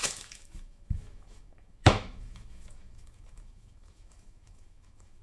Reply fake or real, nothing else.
fake